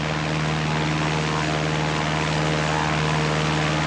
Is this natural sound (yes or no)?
yes